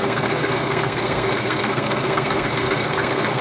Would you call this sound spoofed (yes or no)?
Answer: yes